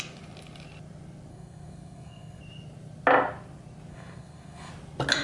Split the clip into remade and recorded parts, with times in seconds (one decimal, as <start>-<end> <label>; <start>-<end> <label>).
0.0-1.3 recorded; 1.3-2.4 remade; 2.4-3.9 recorded; 3.9-4.7 remade; 4.7-5.2 recorded